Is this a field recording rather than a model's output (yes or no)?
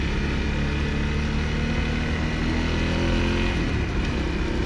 yes